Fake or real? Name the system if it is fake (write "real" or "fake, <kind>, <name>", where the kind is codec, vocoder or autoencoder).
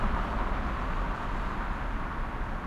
real